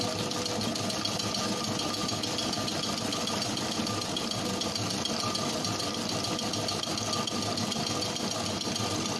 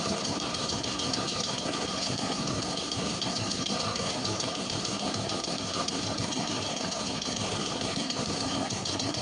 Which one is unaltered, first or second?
first